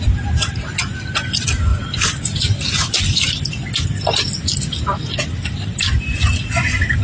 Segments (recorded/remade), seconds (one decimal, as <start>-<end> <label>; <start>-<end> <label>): 0.0-7.0 recorded